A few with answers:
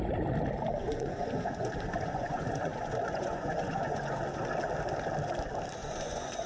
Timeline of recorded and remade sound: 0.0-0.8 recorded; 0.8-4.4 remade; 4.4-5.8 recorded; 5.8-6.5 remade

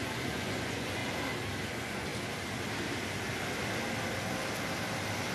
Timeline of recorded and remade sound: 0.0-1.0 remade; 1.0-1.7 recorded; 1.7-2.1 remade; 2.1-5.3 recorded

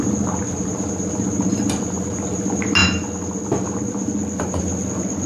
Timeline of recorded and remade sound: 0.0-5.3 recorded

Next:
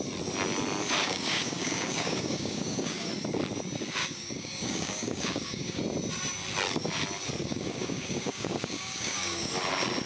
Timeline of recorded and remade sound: 0.0-1.0 recorded; 1.0-3.1 remade; 3.1-4.0 recorded; 4.0-5.8 remade; 5.8-7.4 recorded; 7.4-9.5 remade; 9.5-10.1 recorded

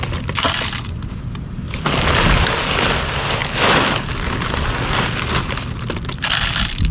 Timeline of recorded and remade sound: 0.0-6.9 recorded

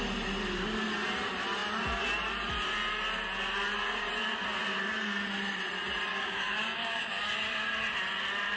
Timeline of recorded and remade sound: 0.0-6.1 recorded; 6.1-7.2 remade; 7.2-8.6 recorded